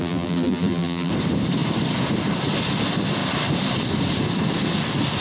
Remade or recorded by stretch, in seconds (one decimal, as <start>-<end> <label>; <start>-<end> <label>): 0.0-1.1 remade; 1.1-5.2 recorded